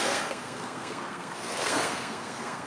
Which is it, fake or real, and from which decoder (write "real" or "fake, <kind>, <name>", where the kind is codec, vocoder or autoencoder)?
fake, codec, SNAC